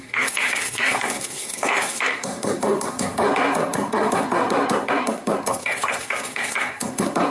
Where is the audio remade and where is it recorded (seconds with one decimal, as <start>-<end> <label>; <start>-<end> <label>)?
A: 0.0-7.3 remade